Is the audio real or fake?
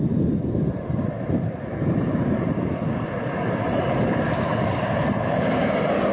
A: fake